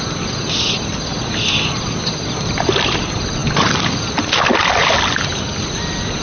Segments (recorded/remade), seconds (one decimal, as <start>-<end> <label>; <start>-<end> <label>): 0.0-6.2 recorded